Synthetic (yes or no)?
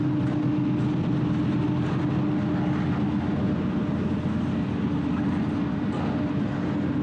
no